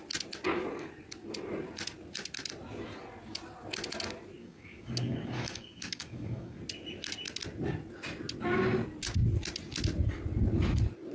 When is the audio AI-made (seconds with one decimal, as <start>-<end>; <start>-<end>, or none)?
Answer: 4.4-6.6